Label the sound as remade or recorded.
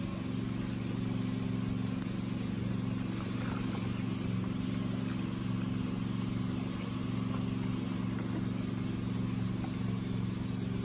recorded